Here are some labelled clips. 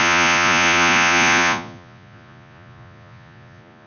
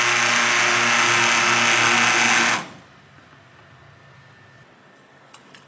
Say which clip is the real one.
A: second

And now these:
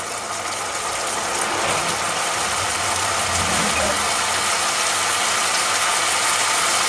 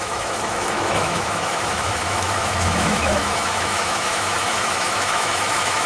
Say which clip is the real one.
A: first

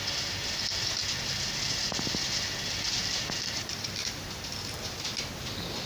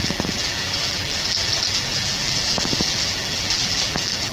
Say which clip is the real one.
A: first